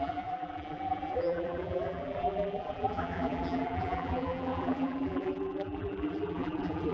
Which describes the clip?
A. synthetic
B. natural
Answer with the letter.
A